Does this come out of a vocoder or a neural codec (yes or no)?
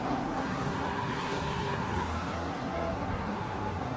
yes